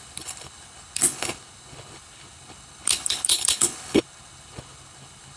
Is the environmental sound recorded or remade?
remade